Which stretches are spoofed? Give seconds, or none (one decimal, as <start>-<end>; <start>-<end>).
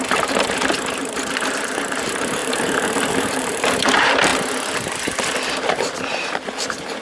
0.0-4.3; 5.7-7.0